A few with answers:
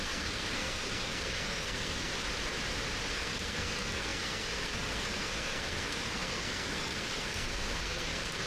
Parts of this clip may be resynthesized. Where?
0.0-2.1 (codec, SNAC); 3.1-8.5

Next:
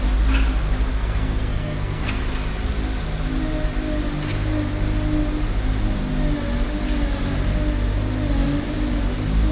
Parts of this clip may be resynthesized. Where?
0.9-2.2 (codec, SNAC)

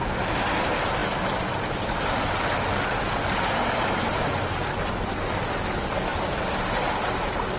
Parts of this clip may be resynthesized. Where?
none

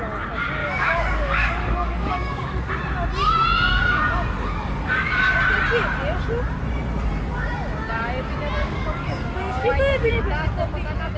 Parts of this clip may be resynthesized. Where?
0.6-2.7 (codec, DAC); 3.7-5.4; 8.6-10.2